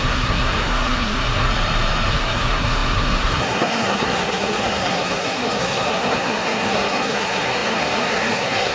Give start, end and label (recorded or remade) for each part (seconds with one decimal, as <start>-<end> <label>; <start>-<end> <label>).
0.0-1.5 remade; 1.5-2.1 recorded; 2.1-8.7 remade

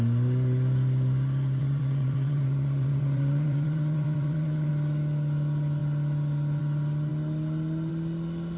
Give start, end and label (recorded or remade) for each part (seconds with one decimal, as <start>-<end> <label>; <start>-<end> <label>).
0.0-1.6 recorded; 1.6-4.7 remade; 4.7-8.6 recorded

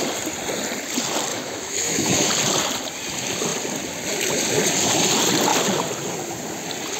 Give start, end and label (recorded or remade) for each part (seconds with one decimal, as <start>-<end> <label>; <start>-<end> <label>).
0.0-1.3 recorded; 1.3-2.3 remade; 2.3-7.0 recorded